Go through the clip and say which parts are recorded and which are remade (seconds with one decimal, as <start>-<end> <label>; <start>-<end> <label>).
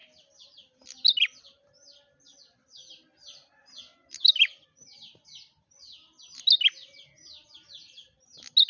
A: 0.0-8.7 recorded